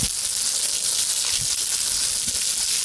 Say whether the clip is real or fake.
real